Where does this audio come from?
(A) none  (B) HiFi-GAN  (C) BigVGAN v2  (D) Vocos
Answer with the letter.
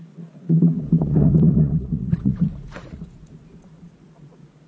D